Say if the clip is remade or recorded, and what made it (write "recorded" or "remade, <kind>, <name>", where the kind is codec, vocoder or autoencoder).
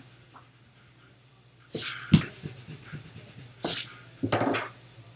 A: recorded